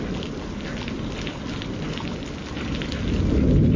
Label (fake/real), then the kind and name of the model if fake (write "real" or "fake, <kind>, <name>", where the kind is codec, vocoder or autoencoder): real